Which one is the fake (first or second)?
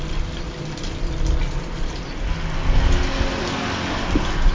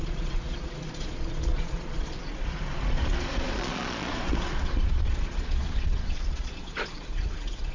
second